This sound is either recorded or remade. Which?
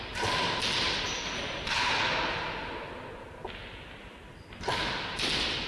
recorded